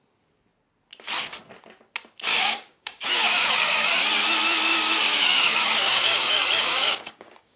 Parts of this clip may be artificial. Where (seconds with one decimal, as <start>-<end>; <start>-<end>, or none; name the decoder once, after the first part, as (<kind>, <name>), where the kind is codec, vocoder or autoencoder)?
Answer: 2.3-3.9 (codec, DAC); 4.7-7.6